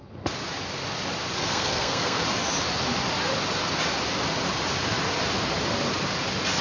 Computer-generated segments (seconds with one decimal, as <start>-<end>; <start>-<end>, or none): 1.4-2.2